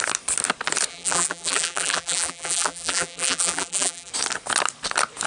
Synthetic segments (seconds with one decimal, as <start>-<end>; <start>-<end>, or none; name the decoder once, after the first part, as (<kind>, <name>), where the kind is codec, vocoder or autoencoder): 0.9-4.1 (vocoder, BigVGAN v2)